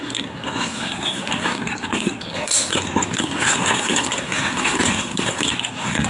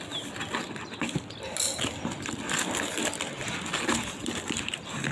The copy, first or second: first